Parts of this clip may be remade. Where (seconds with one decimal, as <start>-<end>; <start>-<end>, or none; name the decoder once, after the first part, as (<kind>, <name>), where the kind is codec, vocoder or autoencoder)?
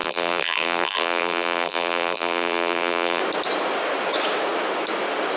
0.0-3.2 (vocoder, BigVGAN v2)